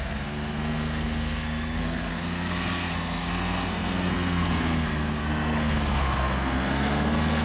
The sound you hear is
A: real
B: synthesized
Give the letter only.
B